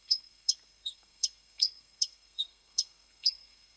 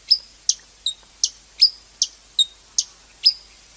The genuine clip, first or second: second